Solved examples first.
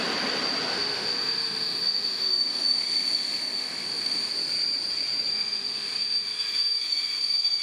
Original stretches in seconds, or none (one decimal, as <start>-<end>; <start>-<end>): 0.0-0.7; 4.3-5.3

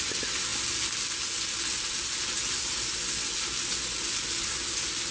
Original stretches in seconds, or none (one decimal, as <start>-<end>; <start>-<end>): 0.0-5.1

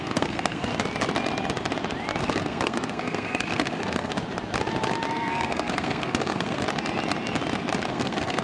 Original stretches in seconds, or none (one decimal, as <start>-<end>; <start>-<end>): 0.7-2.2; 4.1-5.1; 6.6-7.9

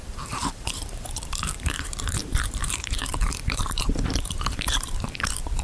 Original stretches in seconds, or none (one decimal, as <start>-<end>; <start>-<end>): none

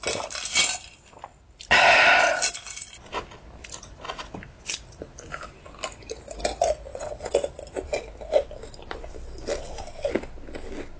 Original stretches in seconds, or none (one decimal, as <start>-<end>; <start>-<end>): 0.0-6.9; 7.6-11.0